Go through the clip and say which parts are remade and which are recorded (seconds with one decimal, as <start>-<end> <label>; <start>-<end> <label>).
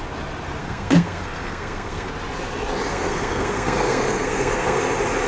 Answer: 0.0-0.6 recorded; 0.6-2.1 remade; 2.1-2.9 recorded; 2.9-4.8 remade; 4.8-5.3 recorded